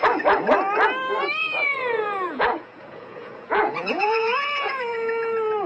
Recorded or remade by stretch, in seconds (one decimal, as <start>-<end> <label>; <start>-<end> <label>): 0.0-1.4 recorded; 1.4-4.8 remade; 4.8-5.7 recorded